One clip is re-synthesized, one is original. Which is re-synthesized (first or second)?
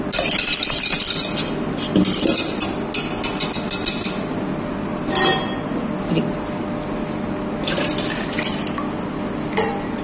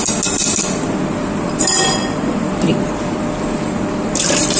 second